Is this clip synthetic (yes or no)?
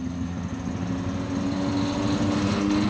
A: no